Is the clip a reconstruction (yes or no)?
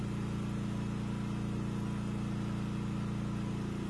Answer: no